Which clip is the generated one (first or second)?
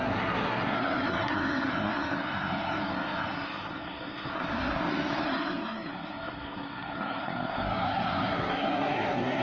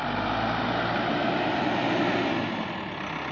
first